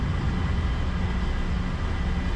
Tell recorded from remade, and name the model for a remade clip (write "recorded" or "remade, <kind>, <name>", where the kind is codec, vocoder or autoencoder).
recorded